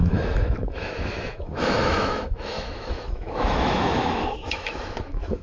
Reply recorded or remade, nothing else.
remade